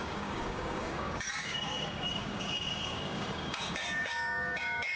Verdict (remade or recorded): remade